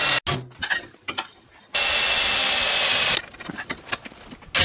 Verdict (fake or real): real